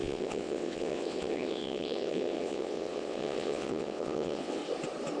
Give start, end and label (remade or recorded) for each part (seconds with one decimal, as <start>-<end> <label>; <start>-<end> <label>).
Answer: 0.0-4.6 remade; 4.6-5.2 recorded